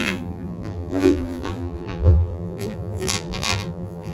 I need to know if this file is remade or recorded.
remade